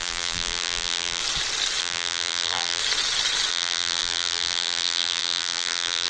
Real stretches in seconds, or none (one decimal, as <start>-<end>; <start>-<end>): 1.2-1.8; 2.8-3.5